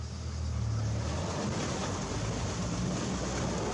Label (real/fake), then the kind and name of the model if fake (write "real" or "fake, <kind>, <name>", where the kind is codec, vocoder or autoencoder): real